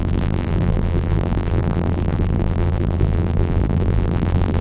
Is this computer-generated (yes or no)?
yes